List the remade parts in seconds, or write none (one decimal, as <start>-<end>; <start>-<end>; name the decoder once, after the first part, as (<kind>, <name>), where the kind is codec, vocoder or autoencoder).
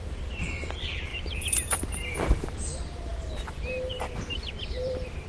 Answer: 0.0-1.1 (vocoder, BigVGAN v2); 1.8-5.3